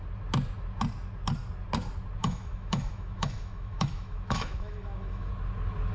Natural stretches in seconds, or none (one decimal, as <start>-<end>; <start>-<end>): 0.0-2.2; 5.3-5.9